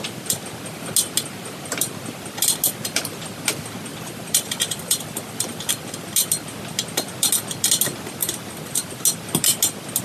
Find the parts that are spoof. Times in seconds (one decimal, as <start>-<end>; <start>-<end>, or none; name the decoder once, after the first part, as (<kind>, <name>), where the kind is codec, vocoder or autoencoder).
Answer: 3.9-5.7 (vocoder, BigVGAN v2); 8.2-9.0